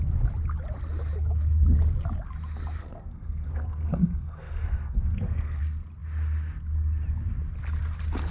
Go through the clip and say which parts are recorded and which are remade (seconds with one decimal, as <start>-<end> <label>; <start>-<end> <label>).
0.0-2.8 recorded; 2.8-5.6 remade; 5.6-8.3 recorded